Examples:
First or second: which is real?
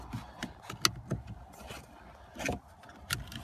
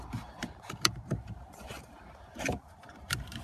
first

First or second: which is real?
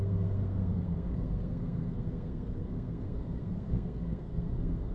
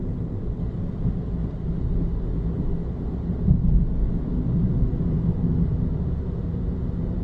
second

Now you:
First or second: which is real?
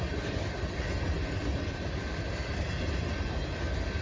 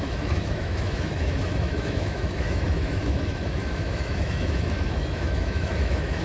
first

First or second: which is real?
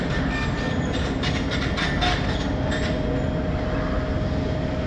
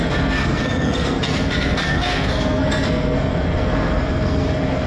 first